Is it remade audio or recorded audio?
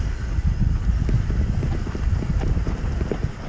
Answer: recorded